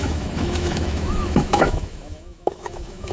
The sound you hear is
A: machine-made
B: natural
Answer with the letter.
A